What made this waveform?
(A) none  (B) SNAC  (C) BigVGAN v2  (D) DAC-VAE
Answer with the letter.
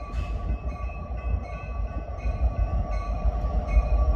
C